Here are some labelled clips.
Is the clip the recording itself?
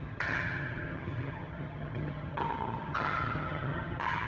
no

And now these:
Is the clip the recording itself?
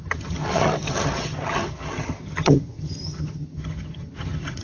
no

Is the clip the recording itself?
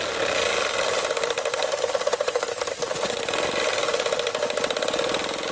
yes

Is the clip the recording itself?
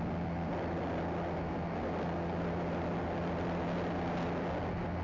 yes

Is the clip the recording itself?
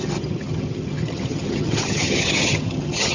no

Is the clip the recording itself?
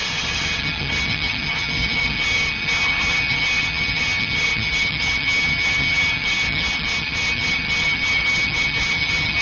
no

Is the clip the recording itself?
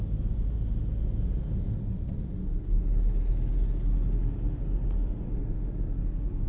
yes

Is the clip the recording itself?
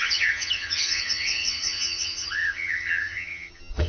no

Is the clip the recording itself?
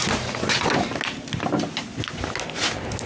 yes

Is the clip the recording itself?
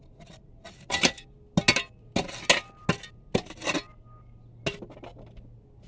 yes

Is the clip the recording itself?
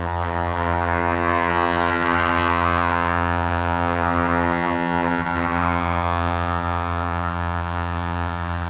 no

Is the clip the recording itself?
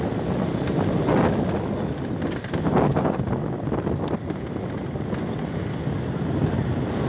yes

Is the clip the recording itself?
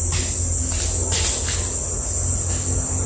yes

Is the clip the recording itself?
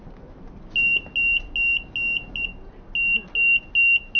yes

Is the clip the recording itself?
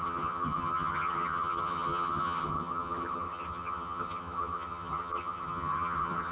no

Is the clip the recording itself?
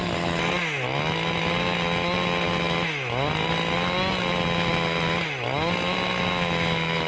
yes